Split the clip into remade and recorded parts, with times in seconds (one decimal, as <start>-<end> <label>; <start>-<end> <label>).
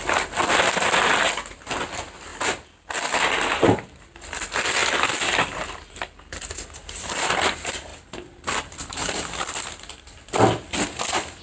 0.0-11.4 recorded